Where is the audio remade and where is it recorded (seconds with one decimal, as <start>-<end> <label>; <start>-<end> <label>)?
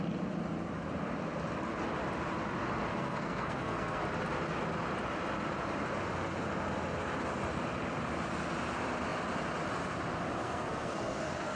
0.0-2.9 recorded; 2.9-4.0 remade; 4.0-10.4 recorded; 10.4-11.6 remade